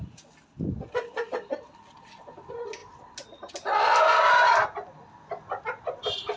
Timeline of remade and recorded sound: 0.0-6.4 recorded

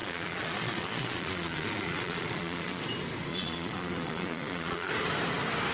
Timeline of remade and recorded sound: 0.0-2.8 remade; 2.8-3.3 recorded; 3.3-4.9 remade; 4.9-5.7 recorded

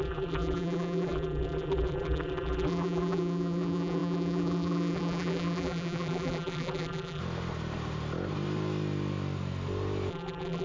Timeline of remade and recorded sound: 0.0-7.2 remade; 7.2-10.1 recorded; 10.1-10.6 remade